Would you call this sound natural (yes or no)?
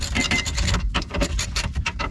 no